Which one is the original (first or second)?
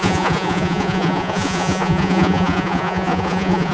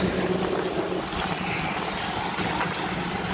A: second